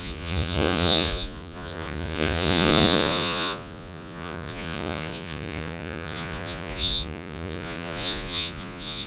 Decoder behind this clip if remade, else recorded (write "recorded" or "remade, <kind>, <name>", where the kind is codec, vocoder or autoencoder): remade, vocoder, Vocos